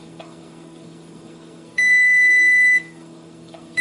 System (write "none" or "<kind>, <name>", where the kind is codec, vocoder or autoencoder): codec, SNAC